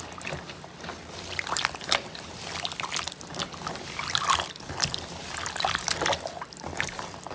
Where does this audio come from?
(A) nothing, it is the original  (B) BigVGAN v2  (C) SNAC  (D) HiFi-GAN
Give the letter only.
A